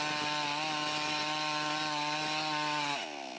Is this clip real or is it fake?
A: real